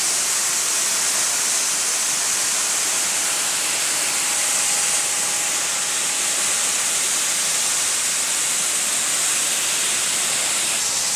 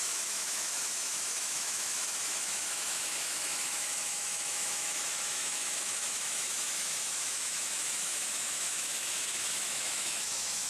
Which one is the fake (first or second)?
second